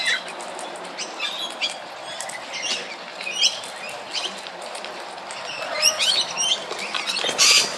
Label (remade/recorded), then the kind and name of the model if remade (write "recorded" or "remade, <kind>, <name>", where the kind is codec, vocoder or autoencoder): recorded